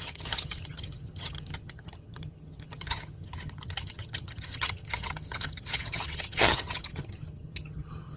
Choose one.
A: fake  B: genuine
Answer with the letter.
A